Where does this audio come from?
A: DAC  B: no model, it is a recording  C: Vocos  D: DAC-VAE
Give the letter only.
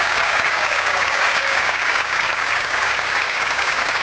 A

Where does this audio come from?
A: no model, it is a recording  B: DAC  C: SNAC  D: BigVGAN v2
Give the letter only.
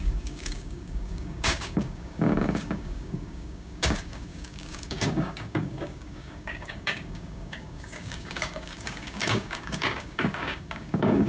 B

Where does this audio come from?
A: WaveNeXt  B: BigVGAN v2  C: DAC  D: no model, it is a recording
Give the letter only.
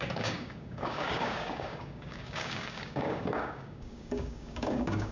C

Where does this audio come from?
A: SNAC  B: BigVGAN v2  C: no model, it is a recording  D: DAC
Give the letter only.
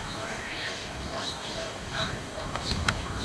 D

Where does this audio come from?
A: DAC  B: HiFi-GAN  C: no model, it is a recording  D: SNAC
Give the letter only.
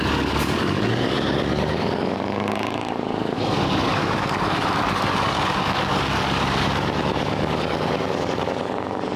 A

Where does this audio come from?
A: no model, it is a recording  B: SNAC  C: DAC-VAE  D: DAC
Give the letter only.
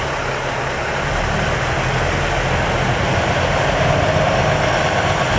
A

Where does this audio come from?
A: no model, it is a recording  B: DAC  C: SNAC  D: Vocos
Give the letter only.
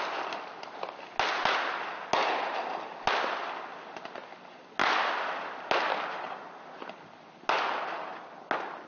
A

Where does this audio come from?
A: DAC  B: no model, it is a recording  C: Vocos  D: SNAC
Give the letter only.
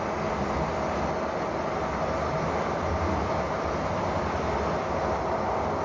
B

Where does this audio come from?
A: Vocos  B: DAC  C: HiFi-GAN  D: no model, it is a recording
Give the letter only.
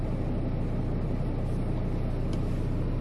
D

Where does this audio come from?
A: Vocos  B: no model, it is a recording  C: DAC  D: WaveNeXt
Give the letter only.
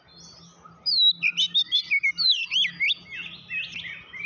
B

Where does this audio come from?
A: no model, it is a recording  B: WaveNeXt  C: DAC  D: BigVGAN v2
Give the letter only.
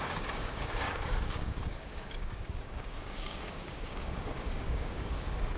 C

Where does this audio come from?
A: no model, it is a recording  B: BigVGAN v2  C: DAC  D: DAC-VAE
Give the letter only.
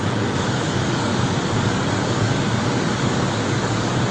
C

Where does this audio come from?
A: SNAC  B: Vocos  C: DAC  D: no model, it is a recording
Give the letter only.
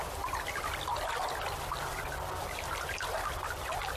D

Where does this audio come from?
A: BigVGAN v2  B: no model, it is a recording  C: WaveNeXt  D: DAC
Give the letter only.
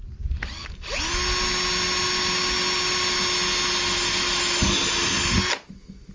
B